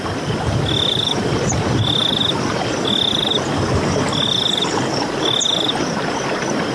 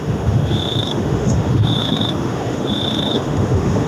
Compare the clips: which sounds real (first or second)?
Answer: first